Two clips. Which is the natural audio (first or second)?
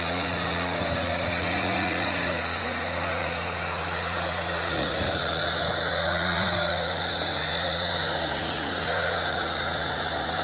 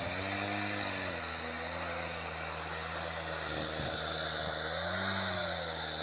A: second